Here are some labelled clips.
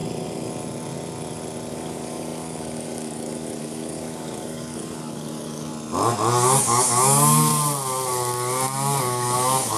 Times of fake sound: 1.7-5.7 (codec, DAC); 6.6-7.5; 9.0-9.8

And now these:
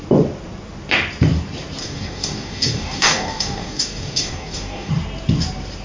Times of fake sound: 1.8-4.9 (codec, DAC)